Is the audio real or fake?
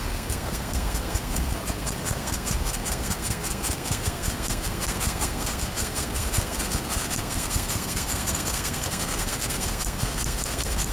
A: fake